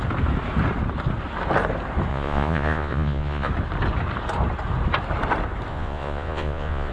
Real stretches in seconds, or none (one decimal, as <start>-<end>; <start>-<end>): 0.0-2.1; 3.5-5.7

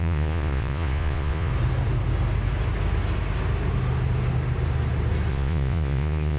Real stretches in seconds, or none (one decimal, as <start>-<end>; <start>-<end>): 1.5-5.3

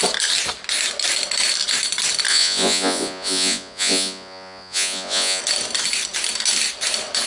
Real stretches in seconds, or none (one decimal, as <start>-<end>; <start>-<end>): 0.0-2.3; 5.4-7.3

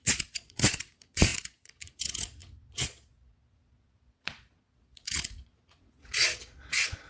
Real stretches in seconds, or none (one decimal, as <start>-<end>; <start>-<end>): none

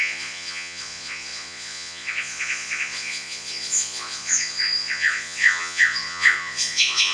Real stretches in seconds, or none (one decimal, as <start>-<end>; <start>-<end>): none

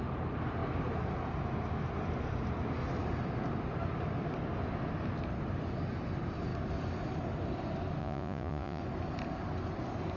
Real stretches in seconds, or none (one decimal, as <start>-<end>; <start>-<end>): 0.0-8.0; 8.8-10.2